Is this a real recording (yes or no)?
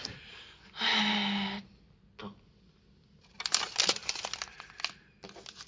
yes